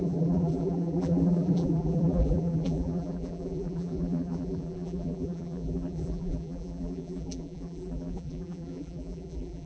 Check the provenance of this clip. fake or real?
fake